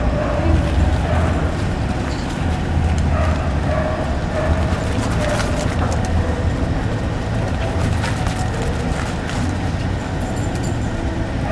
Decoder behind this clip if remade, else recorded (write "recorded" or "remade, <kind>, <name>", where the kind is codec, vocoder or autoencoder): recorded